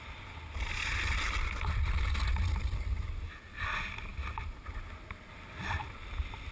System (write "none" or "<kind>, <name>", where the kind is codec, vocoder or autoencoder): none